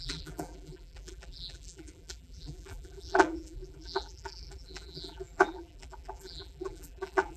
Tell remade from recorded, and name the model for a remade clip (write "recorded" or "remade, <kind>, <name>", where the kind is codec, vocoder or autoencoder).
remade, vocoder, BigVGAN v2